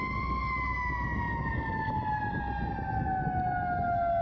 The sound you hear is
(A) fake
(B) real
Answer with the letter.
B